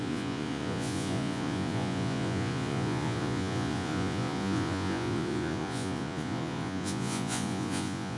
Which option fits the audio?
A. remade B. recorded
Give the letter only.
A